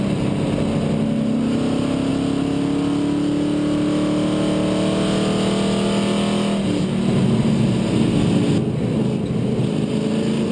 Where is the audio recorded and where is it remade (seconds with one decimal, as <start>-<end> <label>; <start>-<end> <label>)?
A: 0.0-10.5 recorded